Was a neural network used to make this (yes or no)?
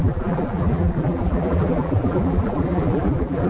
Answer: yes